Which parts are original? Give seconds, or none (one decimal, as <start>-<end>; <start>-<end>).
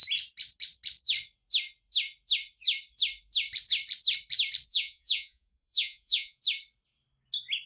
0.0-4.7; 6.4-7.7